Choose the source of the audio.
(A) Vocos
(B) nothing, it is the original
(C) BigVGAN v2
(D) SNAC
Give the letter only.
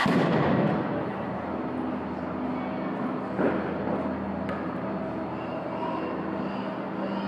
B